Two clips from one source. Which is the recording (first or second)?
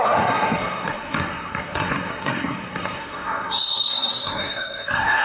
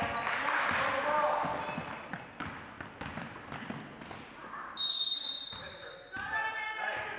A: second